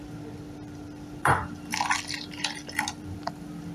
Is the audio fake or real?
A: fake